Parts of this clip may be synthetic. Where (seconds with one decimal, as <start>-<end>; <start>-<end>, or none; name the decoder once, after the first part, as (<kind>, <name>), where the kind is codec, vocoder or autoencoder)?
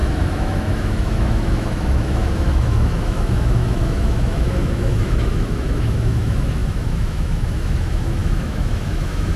0.0-9.4 (autoencoder, DAC-VAE)